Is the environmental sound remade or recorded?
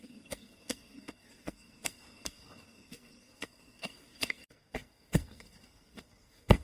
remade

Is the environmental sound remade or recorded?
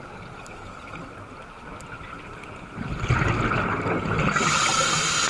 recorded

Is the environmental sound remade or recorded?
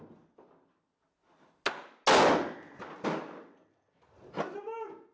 recorded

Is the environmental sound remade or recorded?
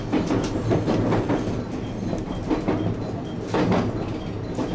recorded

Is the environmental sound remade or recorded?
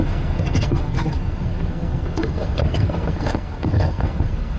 remade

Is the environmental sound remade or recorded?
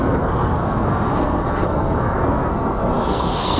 remade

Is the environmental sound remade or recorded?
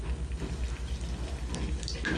recorded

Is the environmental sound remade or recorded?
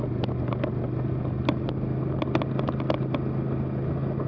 recorded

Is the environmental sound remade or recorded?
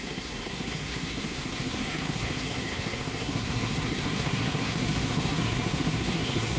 remade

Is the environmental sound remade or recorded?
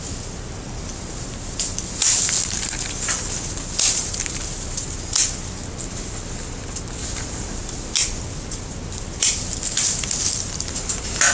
recorded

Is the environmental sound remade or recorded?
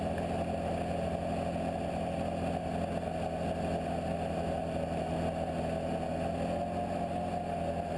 recorded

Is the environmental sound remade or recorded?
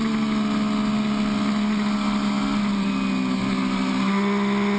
recorded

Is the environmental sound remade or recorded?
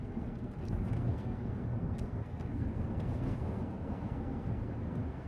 remade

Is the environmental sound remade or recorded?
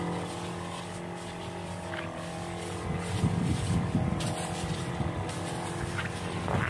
recorded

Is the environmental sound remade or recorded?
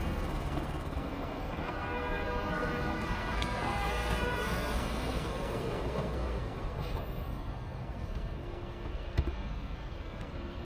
remade